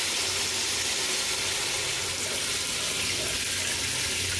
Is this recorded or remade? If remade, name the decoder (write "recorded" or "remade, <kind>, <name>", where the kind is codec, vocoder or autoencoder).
recorded